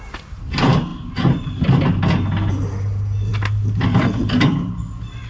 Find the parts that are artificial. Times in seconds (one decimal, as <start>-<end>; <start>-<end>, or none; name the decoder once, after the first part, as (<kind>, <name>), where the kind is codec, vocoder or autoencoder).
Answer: none